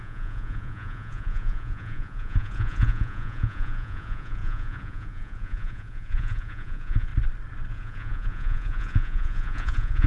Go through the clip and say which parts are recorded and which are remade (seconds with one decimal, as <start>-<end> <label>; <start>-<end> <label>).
0.0-7.1 remade; 7.1-7.7 recorded; 7.7-10.1 remade